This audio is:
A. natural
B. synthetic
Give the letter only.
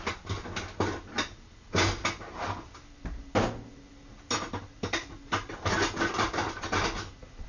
A